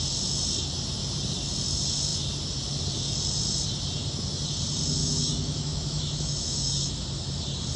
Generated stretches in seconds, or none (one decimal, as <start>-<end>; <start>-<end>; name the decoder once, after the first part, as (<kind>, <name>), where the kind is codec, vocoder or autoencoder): 5.0-6.9 (autoencoder, DAC-VAE)